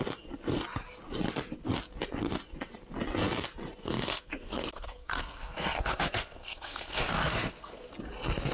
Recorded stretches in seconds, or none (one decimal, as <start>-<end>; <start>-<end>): 0.0-3.8; 7.9-8.5